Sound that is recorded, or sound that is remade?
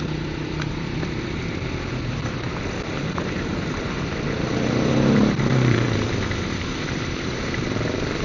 remade